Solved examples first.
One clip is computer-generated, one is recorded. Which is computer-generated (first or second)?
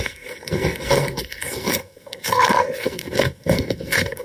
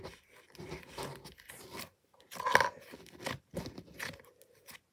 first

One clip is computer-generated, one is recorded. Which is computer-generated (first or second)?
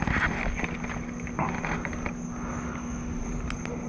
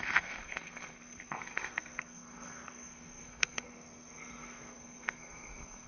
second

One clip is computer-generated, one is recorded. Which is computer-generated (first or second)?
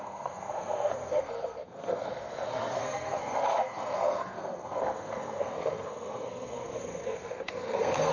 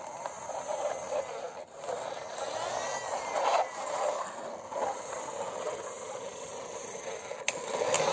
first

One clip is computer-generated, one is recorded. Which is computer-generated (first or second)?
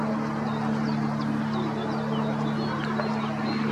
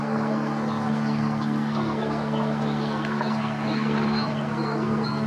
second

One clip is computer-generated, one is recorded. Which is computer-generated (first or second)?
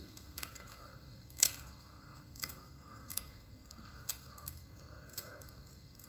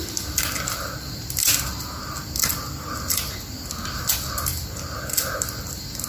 first